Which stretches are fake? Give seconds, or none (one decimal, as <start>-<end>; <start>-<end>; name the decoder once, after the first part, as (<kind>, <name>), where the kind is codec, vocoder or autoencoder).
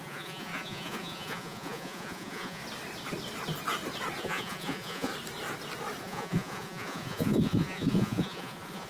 0.0-2.6 (vocoder, Vocos); 4.2-5.1; 6.0-8.9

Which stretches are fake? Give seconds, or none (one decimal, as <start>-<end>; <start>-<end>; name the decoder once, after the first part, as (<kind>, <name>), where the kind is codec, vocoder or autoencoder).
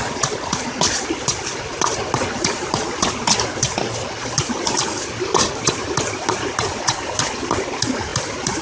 none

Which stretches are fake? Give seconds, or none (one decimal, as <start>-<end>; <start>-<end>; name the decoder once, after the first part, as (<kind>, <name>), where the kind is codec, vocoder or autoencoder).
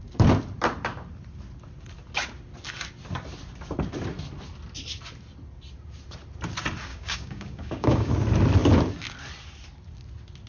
6.9-8.1 (codec, DAC)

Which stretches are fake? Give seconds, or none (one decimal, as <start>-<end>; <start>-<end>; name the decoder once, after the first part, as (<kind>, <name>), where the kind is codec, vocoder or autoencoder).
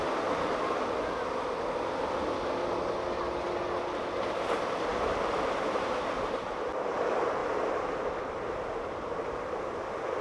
none